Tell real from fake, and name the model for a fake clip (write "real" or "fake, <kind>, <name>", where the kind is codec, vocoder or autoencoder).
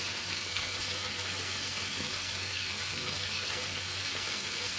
fake, codec, SNAC